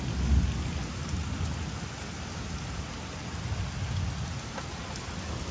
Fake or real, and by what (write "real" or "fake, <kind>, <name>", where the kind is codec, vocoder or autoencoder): real